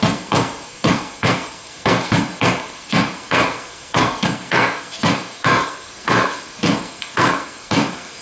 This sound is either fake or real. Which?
fake